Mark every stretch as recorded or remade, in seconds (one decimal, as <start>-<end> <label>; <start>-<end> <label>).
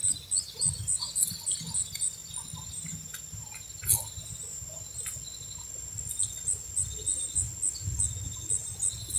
0.0-9.2 recorded